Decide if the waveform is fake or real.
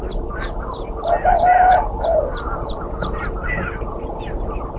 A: fake